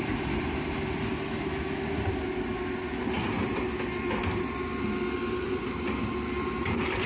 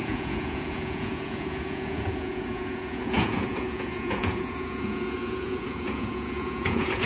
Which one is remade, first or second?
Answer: second